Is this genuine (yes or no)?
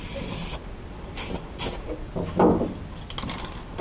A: yes